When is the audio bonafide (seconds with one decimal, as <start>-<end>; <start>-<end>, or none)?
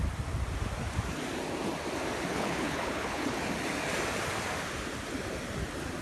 0.0-2.3; 3.4-6.0